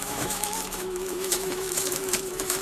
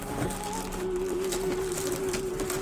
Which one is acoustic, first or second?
second